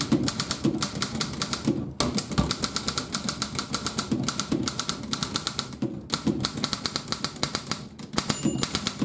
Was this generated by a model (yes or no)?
no